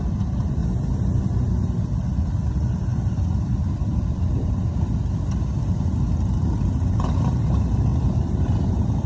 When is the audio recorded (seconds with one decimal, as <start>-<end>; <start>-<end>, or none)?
0.0-0.6; 1.2-2.9; 4.6-7.9